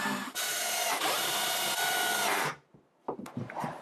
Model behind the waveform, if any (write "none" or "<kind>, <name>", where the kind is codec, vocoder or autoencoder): vocoder, BigVGAN v2